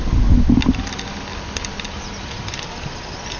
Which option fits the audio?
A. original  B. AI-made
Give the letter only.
A